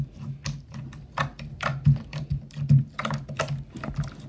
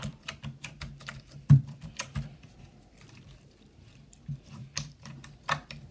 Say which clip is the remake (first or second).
second